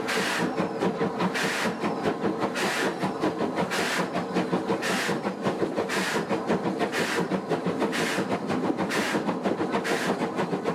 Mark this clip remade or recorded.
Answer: recorded